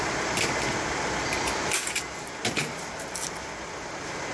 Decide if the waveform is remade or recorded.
recorded